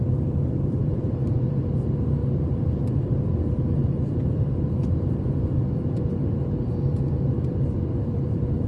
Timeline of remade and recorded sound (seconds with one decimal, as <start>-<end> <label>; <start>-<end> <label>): 0.0-8.7 remade